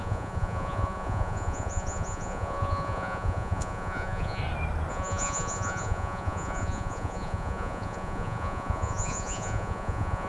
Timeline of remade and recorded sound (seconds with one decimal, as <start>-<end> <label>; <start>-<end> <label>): 0.0-4.4 remade; 4.4-4.9 recorded; 4.9-10.3 remade